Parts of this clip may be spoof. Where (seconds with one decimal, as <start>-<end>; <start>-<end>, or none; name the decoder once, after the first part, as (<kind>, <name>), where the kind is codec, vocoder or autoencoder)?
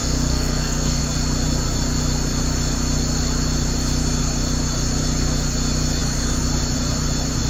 0.0-1.0 (codec, SNAC)